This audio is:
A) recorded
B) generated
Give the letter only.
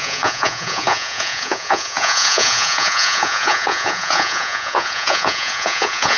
B